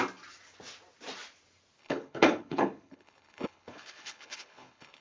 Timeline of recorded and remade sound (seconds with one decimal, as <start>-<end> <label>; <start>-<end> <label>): 0.0-1.8 recorded; 1.8-5.0 remade